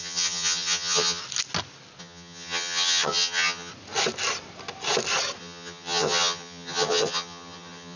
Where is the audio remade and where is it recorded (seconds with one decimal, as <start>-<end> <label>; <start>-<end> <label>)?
0.0-1.2 remade; 1.2-2.0 recorded; 2.0-3.7 remade; 3.7-5.4 recorded; 5.4-8.0 remade